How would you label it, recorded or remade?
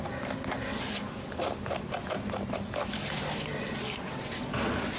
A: recorded